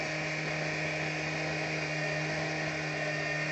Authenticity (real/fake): real